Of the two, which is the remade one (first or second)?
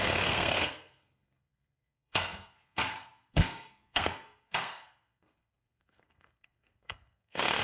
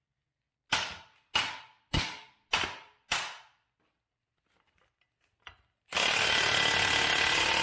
first